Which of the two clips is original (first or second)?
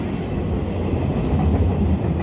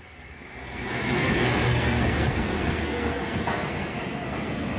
first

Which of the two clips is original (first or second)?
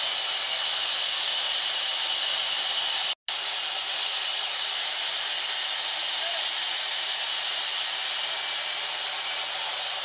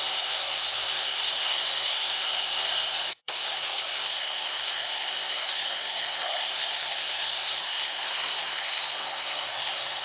first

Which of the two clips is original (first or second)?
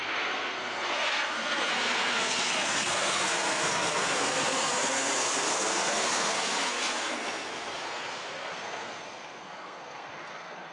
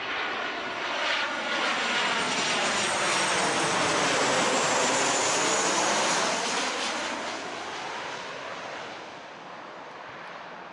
second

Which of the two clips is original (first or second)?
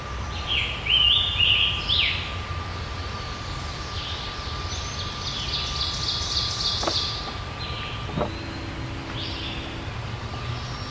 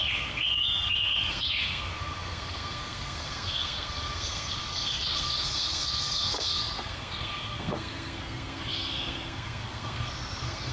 first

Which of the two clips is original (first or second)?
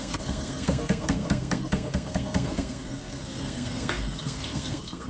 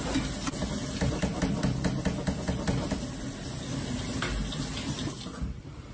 second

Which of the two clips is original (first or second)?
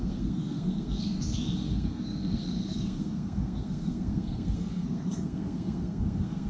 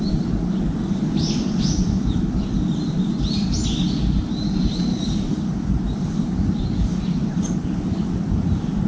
second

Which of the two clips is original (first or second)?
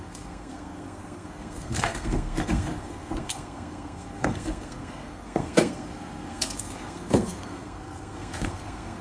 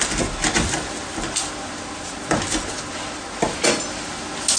second